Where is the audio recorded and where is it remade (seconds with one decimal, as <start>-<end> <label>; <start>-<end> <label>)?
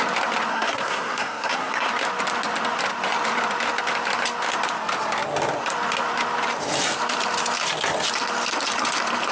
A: 0.0-0.5 recorded; 0.5-1.9 remade; 1.9-9.3 recorded